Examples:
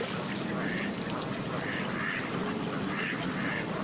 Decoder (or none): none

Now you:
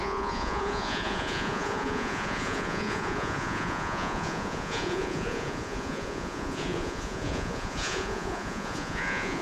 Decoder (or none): vocoder, Vocos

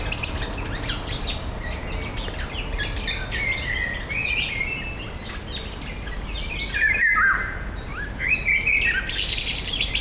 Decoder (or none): none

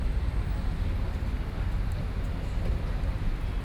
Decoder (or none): none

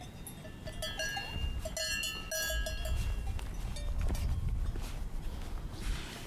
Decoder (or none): none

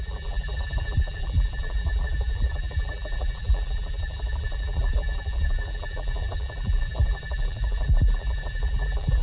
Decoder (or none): vocoder, BigVGAN v2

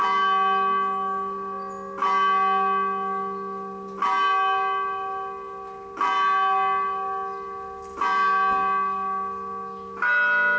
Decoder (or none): none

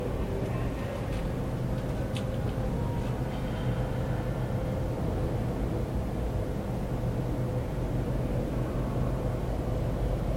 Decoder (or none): none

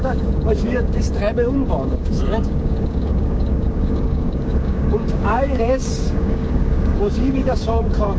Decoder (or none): codec, DAC